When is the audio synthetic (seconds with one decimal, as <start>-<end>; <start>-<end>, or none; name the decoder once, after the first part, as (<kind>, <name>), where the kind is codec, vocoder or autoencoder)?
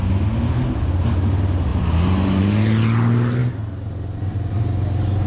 none